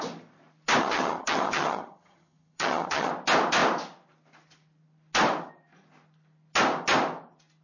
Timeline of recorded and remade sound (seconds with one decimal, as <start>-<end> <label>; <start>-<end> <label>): 0.0-0.8 recorded; 0.8-3.1 remade; 3.1-7.6 recorded